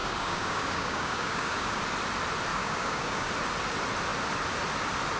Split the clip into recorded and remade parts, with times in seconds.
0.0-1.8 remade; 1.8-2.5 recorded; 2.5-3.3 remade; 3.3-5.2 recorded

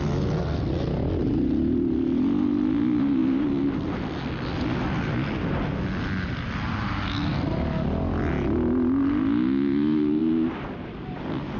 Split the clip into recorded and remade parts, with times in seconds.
0.0-11.6 recorded

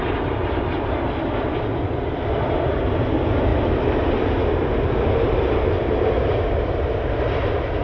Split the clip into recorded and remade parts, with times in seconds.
0.0-7.8 recorded

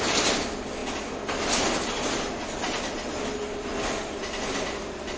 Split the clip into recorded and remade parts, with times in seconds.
0.0-5.2 recorded

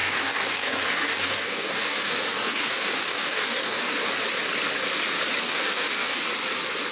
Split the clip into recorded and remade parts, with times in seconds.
0.0-4.1 remade; 4.1-5.4 recorded; 5.4-6.2 remade; 6.2-6.9 recorded

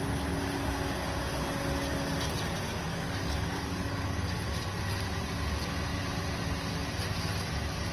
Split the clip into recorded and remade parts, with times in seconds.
0.0-2.9 recorded; 2.9-4.3 remade; 4.3-7.9 recorded

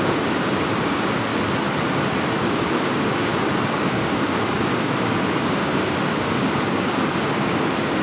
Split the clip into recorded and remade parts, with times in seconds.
0.0-1.3 remade; 1.3-2.4 recorded; 2.4-8.0 remade

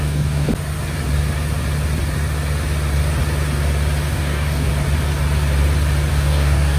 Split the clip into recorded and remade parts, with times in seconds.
0.0-0.5 remade; 0.5-4.1 recorded; 4.1-4.7 remade; 4.7-6.1 recorded; 6.1-6.8 remade